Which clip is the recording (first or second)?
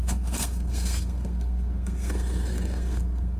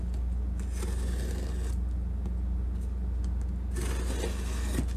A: second